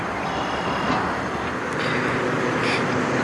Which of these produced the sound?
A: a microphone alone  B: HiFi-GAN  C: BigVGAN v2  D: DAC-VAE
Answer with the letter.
A